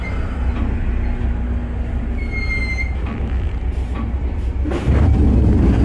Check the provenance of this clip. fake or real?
real